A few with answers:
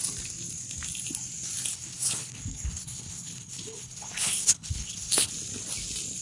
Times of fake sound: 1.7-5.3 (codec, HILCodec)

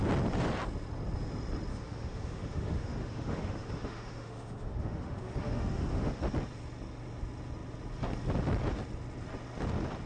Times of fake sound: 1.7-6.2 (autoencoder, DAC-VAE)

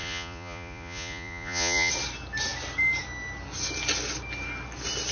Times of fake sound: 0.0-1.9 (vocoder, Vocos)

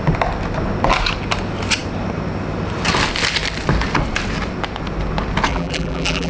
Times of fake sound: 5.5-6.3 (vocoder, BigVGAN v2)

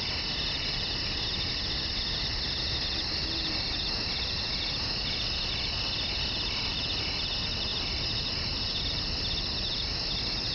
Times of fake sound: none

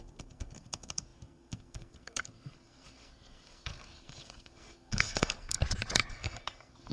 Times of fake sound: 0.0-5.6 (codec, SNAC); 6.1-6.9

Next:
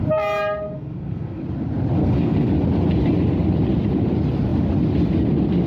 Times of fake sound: 0.7-1.4 (codec, SNAC); 2.0-2.5